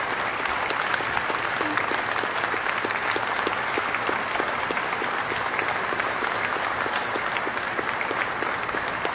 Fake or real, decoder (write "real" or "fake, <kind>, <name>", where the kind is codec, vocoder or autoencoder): real